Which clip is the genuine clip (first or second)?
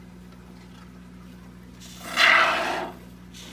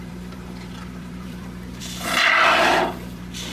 first